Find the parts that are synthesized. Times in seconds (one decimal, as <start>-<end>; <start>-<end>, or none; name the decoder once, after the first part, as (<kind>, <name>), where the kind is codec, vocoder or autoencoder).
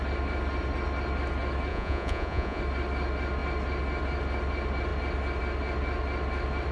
1.7-2.6 (vocoder, Vocos)